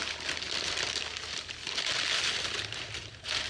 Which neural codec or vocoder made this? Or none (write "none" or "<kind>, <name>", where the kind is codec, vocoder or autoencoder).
none